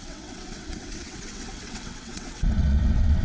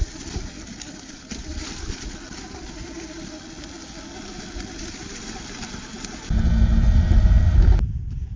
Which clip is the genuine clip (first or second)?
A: second